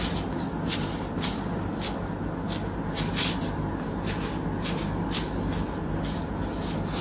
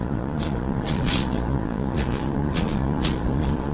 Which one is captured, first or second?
first